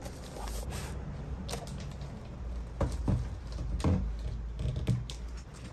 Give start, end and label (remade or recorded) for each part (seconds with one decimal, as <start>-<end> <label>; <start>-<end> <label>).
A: 0.0-5.7 recorded

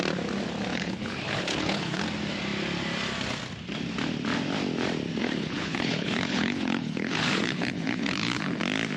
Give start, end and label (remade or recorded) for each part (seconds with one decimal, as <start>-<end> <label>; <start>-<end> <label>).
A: 0.0-0.7 recorded; 0.7-2.0 remade; 2.0-5.2 recorded; 5.2-8.6 remade; 8.6-9.0 recorded

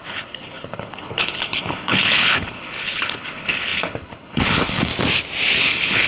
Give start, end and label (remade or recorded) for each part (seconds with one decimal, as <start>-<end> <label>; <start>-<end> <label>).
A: 0.0-4.9 remade; 4.9-5.6 recorded; 5.6-6.1 remade